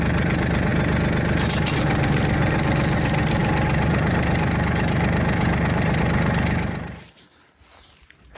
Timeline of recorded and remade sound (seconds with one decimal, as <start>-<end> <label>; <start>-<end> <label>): 0.0-0.7 remade; 0.7-1.7 recorded; 1.7-8.4 remade